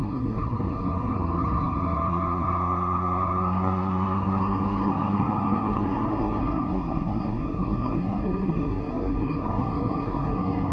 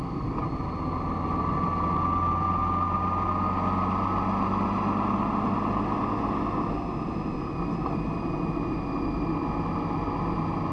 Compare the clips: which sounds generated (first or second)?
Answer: first